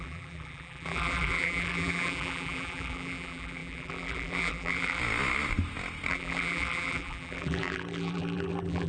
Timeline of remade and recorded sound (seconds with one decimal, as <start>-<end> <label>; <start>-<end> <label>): 0.0-5.0 remade; 5.0-6.1 recorded; 6.1-8.9 remade